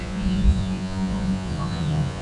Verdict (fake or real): fake